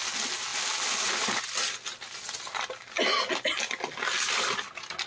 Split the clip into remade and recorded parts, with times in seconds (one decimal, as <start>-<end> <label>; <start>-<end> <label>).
0.0-5.1 recorded